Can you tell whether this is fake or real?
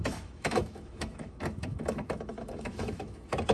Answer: fake